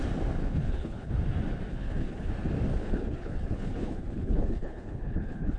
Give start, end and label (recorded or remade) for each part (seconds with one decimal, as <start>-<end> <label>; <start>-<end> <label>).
0.0-0.4 recorded; 0.4-1.1 remade; 1.1-1.7 recorded; 1.7-2.3 remade; 2.3-2.7 recorded; 2.7-5.6 remade